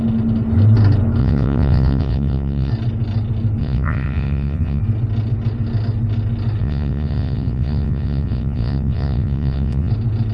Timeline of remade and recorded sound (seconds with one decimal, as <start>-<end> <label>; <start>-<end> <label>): 0.0-1.2 recorded; 1.2-2.7 remade; 2.7-3.6 recorded; 3.6-4.8 remade; 4.8-6.6 recorded; 6.6-9.9 remade; 9.9-10.3 recorded

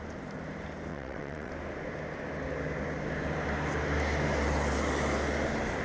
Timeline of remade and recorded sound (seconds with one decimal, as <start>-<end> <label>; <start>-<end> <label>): 0.0-0.9 recorded; 0.9-1.5 remade; 1.5-5.8 recorded

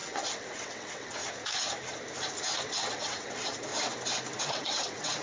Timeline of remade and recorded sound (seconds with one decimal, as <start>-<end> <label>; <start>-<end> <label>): 0.0-1.2 remade; 1.2-2.7 recorded; 2.7-3.7 remade; 3.7-4.4 recorded; 4.4-5.2 remade

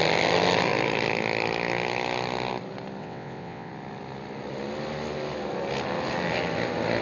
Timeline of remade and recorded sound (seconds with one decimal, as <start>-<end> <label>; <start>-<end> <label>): 0.0-3.0 recorded; 3.0-3.7 remade; 3.7-7.0 recorded

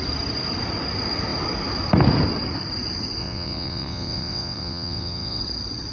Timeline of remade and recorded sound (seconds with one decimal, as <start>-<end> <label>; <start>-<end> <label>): 0.0-3.2 recorded; 3.2-5.4 remade; 5.4-5.9 recorded